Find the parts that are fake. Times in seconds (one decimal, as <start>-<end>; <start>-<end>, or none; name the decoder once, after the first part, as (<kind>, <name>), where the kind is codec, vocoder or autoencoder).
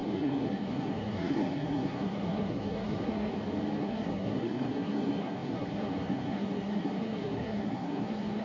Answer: 0.0-3.3 (codec, SNAC); 3.8-8.4